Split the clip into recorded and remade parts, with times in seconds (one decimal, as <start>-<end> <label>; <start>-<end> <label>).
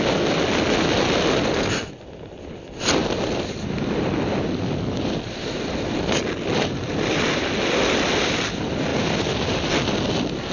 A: 0.0-10.5 recorded